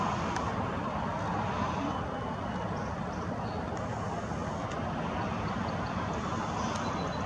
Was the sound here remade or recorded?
recorded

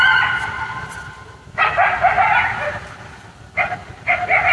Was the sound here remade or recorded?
recorded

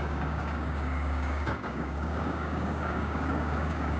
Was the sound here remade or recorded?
remade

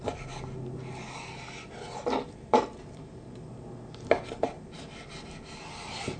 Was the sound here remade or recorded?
recorded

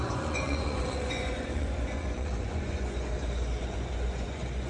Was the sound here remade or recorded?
remade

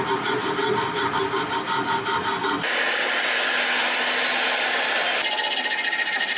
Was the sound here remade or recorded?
recorded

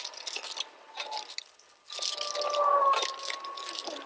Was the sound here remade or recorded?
recorded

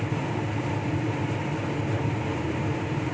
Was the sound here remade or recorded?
recorded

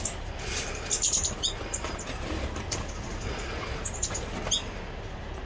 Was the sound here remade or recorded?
recorded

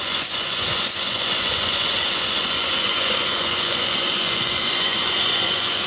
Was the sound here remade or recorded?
remade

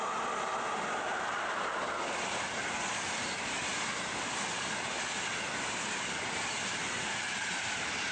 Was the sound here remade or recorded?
recorded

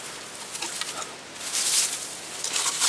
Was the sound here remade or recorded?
recorded